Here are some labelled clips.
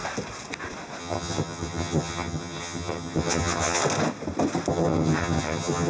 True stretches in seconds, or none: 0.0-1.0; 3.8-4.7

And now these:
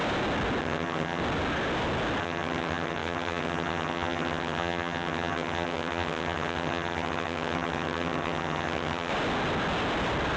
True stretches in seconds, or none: 0.0-0.6; 1.2-2.2; 9.1-10.4

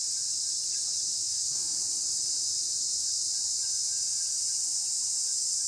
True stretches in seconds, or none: 0.0-1.1; 1.7-5.7

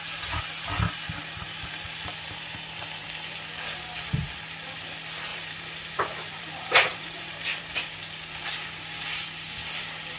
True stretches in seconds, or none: 0.0-5.3; 7.6-10.2

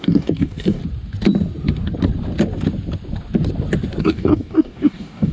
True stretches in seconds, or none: 0.8-4.0

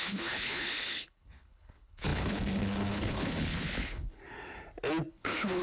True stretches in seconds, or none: 4.2-5.1

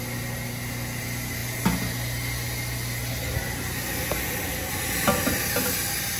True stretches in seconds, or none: 0.0-6.2